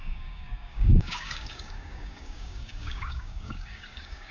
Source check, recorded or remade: remade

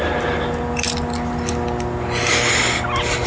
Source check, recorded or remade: recorded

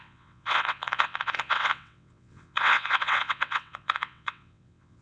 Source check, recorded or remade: remade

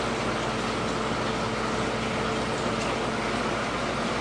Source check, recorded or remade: recorded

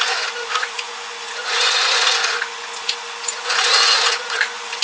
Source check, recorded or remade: remade